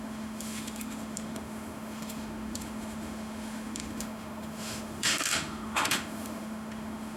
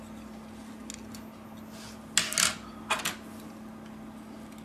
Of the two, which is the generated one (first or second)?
first